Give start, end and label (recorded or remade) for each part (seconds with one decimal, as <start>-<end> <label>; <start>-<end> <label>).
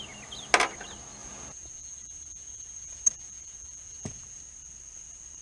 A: 0.0-1.2 recorded; 1.2-4.4 remade; 4.4-5.4 recorded